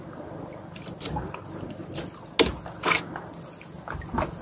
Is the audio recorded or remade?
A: recorded